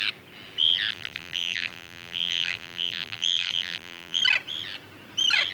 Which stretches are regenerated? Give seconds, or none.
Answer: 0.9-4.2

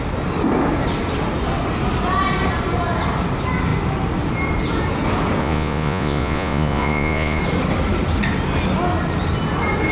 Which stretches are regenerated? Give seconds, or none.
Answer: 5.4-7.4

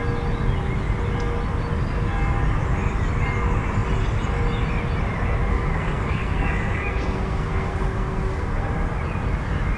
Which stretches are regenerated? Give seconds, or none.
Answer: 5.5-8.7

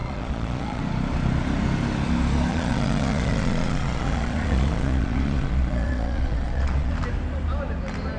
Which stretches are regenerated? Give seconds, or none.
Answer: 0.0-0.8; 2.5-6.9

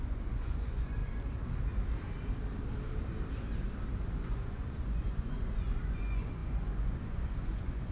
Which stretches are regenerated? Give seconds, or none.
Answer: 0.0-1.0; 4.2-7.9